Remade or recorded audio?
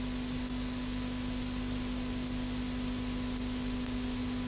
recorded